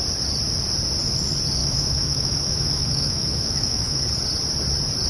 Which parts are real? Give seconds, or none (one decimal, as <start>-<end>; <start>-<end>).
0.0-1.6; 4.0-5.1